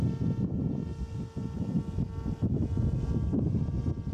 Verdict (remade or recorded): recorded